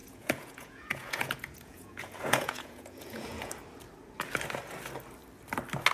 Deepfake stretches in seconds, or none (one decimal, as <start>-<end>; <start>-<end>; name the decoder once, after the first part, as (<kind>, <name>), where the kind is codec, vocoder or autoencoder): 0.0-3.5 (vocoder, Vocos)